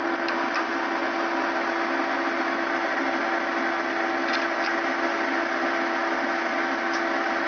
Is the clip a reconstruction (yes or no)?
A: no